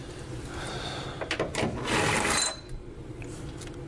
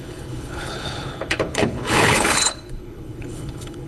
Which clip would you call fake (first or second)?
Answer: second